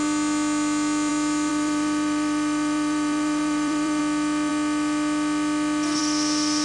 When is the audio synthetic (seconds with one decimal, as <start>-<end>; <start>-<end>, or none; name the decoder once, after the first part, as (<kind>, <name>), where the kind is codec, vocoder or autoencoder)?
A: 1.5-4.0 (vocoder, BigVGAN v2)